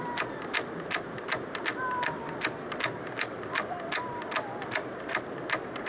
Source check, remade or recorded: recorded